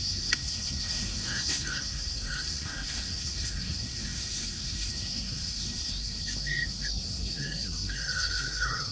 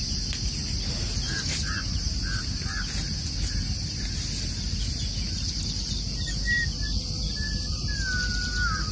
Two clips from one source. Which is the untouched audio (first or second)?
second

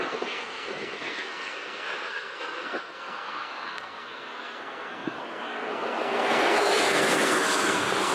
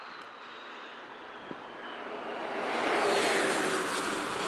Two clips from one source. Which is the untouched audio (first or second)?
second